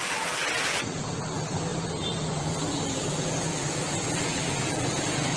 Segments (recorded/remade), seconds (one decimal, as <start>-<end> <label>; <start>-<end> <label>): 0.0-5.4 remade